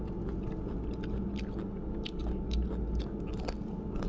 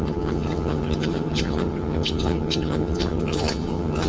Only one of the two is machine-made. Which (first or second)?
second